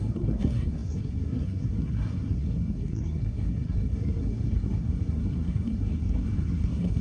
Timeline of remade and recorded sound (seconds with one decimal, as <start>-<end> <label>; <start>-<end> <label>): 0.0-7.0 remade